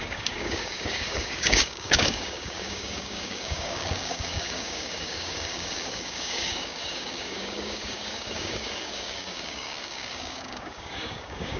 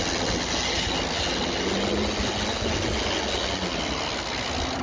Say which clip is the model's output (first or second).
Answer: first